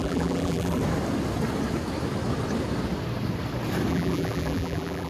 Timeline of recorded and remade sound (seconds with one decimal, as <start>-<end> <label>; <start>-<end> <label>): 0.0-0.8 remade; 0.8-3.9 recorded; 3.9-5.1 remade